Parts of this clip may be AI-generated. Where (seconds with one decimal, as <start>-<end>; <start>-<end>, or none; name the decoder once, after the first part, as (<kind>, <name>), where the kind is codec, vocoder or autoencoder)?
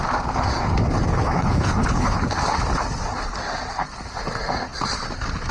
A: 1.1-2.2 (codec, HILCodec)